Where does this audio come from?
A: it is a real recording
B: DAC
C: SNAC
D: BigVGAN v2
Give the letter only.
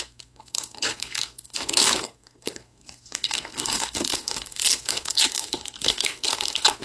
C